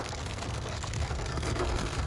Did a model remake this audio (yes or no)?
yes